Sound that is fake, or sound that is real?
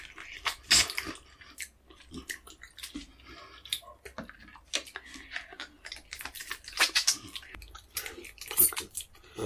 real